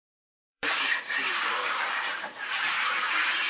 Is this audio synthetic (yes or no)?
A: yes